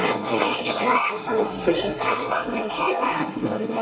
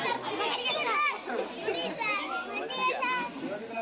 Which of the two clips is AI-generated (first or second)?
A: first